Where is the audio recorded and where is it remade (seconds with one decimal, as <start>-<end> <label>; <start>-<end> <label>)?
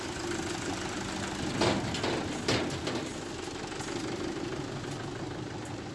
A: 0.0-5.9 recorded